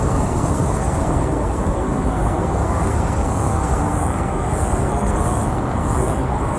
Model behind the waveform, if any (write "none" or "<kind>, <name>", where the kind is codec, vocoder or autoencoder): codec, SNAC